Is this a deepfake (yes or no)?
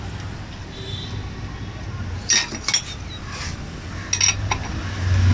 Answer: no